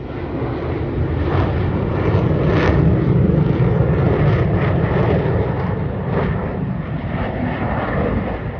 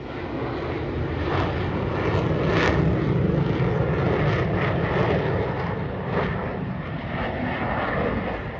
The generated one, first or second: first